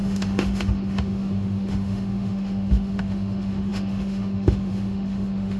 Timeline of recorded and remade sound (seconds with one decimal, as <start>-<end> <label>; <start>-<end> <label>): 0.0-5.6 remade